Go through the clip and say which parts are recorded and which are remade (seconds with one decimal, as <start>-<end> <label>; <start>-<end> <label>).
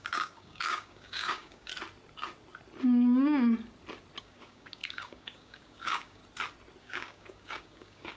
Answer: 0.0-1.7 remade; 1.7-4.2 recorded; 4.2-6.2 remade; 6.2-6.8 recorded; 6.8-8.2 remade